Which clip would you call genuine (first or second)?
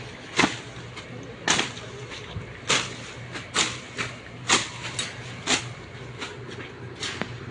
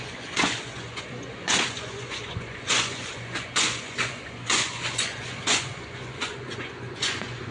first